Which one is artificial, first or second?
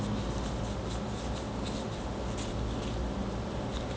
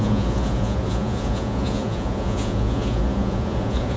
second